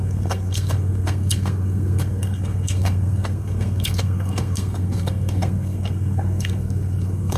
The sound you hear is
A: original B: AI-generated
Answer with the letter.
B